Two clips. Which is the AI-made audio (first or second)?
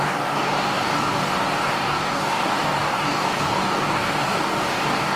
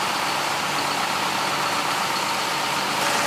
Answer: first